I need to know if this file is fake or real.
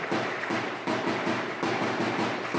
real